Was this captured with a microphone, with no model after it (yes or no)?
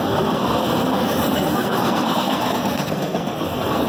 no